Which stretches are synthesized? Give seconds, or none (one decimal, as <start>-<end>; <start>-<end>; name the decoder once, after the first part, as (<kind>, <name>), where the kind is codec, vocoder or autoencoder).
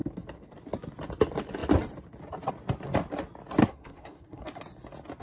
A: 3.6-4.4 (codec, SNAC)